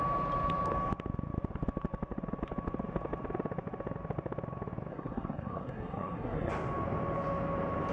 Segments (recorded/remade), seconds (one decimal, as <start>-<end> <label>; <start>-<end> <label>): 0.0-4.9 recorded; 4.9-6.5 remade; 6.5-7.9 recorded